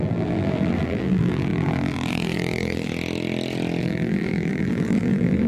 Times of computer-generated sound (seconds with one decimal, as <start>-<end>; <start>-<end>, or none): 0.0-2.9; 3.8-5.5